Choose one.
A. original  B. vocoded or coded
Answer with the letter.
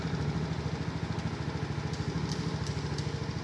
A